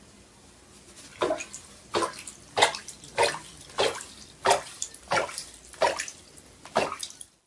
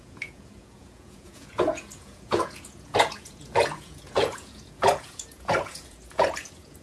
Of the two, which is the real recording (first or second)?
first